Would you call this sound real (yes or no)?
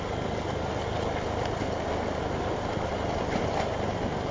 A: yes